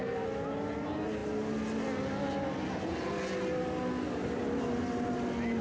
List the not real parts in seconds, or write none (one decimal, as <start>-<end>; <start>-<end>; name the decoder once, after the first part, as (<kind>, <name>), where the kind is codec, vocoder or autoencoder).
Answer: none